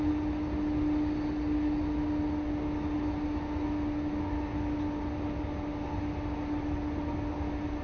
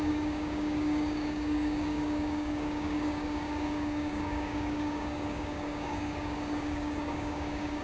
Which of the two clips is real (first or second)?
first